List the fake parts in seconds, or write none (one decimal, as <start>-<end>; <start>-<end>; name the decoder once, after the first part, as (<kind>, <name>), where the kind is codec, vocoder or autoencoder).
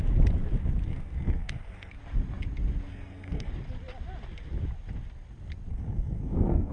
0.9-1.9 (codec, SNAC); 2.9-3.5; 5.7-6.7